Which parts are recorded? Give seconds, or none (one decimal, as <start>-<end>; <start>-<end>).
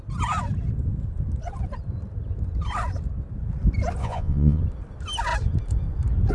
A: 0.0-4.0; 4.6-6.3